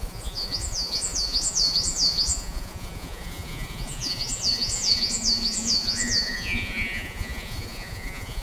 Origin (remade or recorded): remade